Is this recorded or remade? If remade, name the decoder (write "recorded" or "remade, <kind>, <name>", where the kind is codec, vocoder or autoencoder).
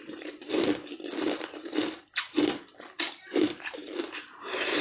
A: remade, vocoder, BigVGAN v2